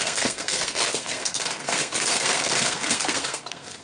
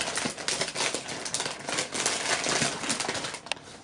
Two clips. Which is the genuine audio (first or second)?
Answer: second